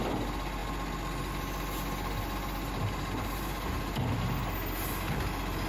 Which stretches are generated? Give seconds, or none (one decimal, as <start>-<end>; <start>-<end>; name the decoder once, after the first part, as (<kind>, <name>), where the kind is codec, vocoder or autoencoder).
none